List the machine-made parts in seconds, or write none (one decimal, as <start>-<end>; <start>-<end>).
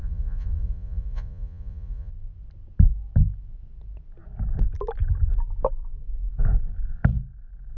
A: 0.0-2.1